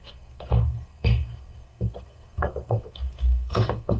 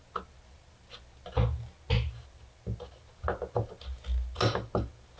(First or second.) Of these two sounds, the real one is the second